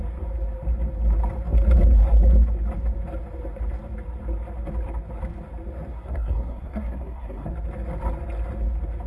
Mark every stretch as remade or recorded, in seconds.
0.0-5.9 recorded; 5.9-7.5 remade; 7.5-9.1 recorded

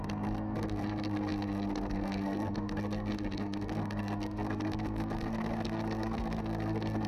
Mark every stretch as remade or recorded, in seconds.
0.0-7.1 remade

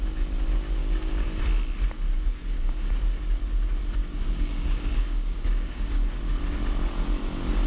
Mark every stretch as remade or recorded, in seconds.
0.0-0.8 recorded; 0.8-1.4 remade; 1.4-2.1 recorded; 2.1-2.9 remade; 2.9-4.0 recorded; 4.0-6.2 remade; 6.2-7.7 recorded